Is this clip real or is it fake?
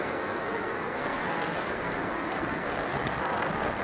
fake